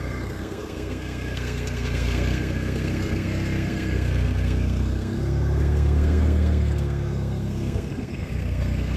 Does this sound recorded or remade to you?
remade